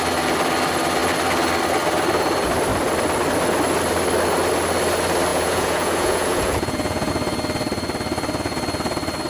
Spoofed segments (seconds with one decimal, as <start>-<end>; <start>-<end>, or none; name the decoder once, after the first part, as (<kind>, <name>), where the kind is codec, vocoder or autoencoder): 5.3-7.1 (vocoder, Vocos)

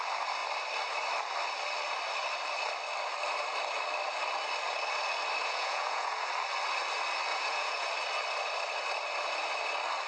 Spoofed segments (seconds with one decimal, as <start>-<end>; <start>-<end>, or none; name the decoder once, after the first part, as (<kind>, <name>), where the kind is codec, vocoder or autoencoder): 5.4-6.3 (vocoder, Vocos); 7.3-7.9

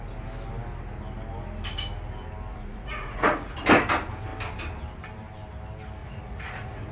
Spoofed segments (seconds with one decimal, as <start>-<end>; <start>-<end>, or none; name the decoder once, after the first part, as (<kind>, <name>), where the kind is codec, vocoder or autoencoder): 2.5-3.6 (vocoder, Vocos); 6.0-6.9